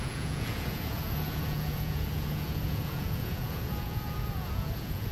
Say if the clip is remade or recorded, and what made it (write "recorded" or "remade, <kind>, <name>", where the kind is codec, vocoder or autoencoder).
remade, vocoder, Vocos